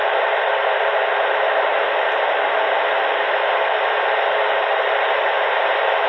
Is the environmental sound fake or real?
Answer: fake